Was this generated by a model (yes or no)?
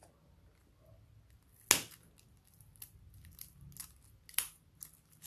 no